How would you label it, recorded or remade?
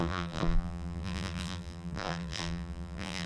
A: remade